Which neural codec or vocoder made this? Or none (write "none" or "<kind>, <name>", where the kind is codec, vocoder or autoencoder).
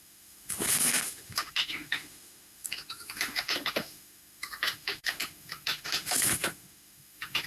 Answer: autoencoder, DAC-VAE